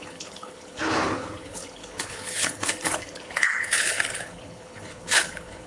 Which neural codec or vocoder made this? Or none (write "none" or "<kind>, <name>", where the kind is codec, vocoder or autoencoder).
codec, HILCodec